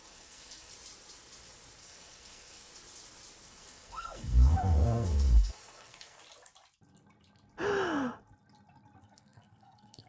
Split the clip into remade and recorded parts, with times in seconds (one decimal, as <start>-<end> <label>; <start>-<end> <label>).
0.0-0.7 remade; 0.7-1.8 recorded; 1.8-2.7 remade; 2.7-3.4 recorded; 3.4-6.2 remade; 6.2-9.0 recorded; 9.0-10.1 remade